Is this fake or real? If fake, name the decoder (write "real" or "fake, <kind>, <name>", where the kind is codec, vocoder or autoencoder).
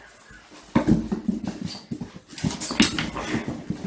real